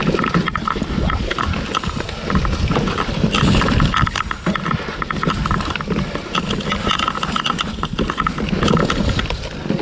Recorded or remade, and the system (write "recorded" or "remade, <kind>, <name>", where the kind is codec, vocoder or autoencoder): recorded